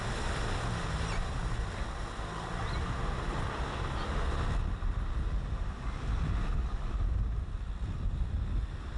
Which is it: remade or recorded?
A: recorded